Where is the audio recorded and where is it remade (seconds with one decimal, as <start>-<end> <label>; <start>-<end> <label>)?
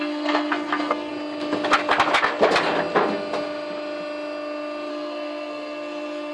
0.0-1.1 remade; 1.1-4.9 recorded; 4.9-6.3 remade